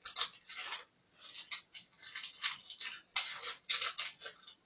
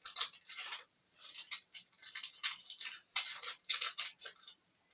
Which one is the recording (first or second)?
first